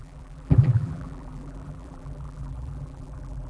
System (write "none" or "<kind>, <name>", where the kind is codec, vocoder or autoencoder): vocoder, BigVGAN v2